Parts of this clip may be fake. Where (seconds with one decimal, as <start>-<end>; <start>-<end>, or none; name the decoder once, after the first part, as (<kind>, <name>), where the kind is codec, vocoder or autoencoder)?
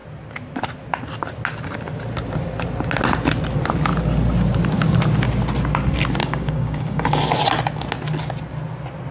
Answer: 6.2-7.0 (codec, DAC)